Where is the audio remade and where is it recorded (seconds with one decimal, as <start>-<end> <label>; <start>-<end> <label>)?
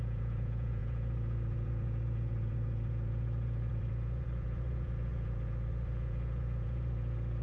0.0-7.4 remade